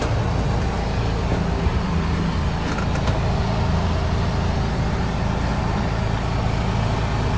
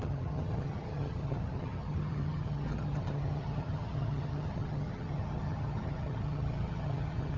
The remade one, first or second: second